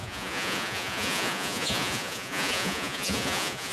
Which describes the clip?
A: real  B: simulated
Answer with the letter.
B